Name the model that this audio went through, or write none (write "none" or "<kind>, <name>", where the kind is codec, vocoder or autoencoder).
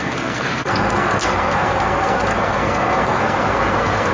codec, SNAC